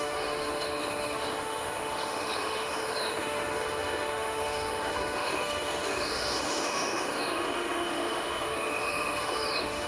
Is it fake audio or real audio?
fake